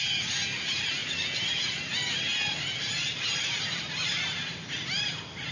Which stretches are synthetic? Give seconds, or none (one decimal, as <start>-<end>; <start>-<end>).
none